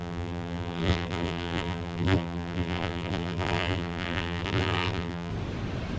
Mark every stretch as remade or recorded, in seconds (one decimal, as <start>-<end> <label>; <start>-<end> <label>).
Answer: 0.0-5.3 remade; 5.3-6.0 recorded